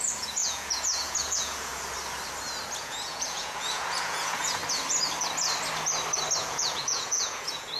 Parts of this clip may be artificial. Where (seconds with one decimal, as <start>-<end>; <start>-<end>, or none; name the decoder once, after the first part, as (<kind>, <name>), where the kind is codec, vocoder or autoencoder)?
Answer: 0.0-1.7 (vocoder, Vocos); 2.8-4.6; 6.4-7.8